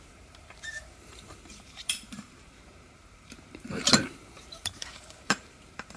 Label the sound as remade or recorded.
remade